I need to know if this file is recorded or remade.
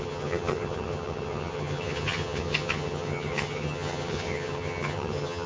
remade